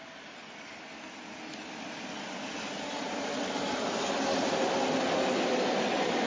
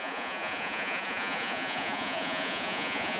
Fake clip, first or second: second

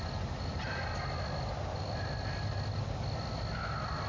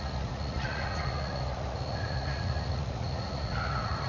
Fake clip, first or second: second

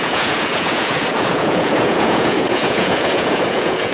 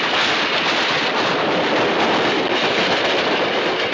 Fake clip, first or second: first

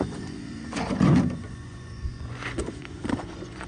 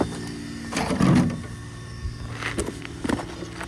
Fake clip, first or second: first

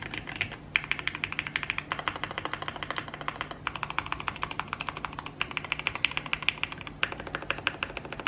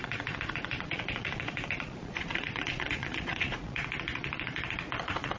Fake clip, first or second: second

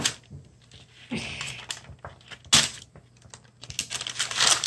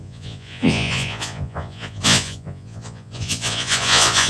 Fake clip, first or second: second